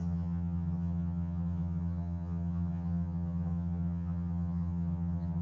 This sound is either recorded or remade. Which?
remade